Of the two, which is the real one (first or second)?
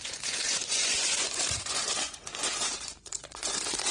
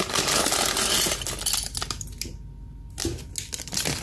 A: second